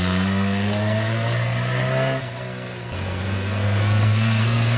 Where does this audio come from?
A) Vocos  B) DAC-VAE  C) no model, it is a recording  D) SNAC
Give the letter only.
D